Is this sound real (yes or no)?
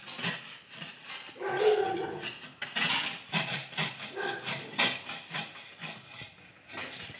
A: yes